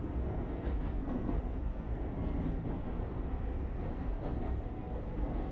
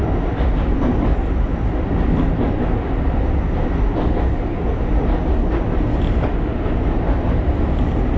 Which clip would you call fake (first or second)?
first